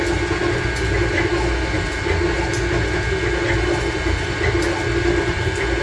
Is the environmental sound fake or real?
real